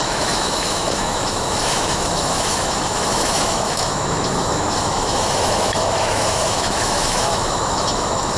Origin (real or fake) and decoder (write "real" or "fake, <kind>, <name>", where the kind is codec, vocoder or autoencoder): fake, autoencoder, DAC-VAE